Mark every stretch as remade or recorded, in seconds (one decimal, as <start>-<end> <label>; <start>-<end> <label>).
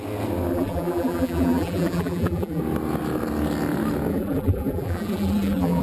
0.0-0.5 recorded; 0.5-2.6 remade; 2.6-4.1 recorded; 4.1-5.8 remade